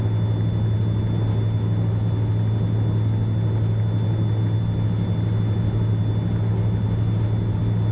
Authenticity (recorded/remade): recorded